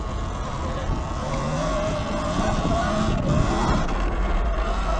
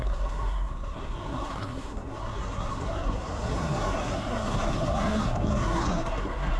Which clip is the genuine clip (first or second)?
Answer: first